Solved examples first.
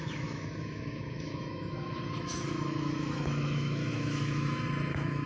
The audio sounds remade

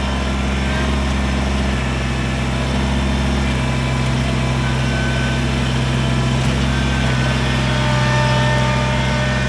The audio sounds recorded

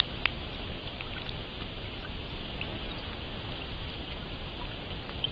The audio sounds recorded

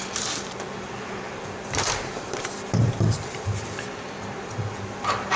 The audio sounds remade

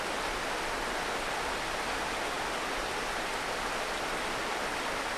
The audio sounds recorded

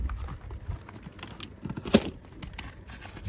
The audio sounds recorded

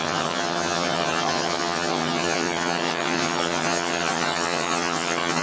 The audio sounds remade